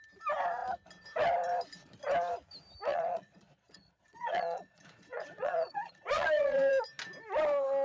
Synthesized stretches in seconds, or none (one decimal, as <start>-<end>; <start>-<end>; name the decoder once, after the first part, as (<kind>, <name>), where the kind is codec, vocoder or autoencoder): 2.9-6.7 (vocoder, Vocos)